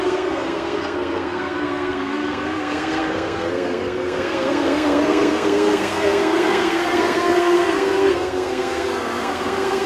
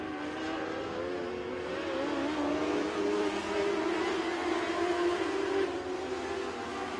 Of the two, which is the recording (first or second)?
second